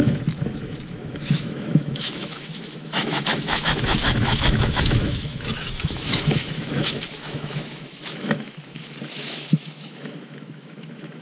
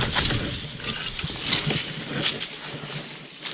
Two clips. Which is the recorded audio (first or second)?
second